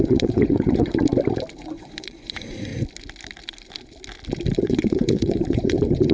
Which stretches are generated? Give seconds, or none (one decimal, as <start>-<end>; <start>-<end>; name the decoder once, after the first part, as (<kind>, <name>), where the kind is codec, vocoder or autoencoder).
0.0-0.9 (vocoder, Vocos); 1.6-2.7; 4.6-6.1